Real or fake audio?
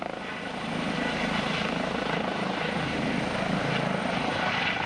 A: real